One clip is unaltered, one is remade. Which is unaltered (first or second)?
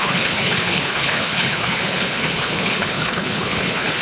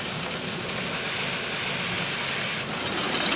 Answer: second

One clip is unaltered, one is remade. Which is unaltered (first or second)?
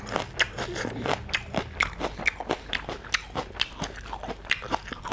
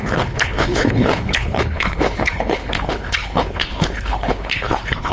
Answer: first